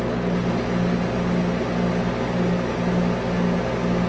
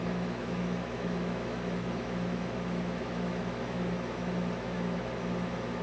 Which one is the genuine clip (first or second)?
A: first